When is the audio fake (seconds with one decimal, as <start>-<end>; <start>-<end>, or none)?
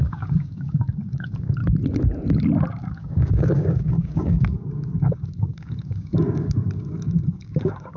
0.0-1.6; 2.7-8.0